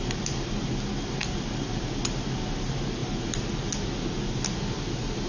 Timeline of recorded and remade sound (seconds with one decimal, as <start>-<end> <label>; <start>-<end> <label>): 0.0-5.3 recorded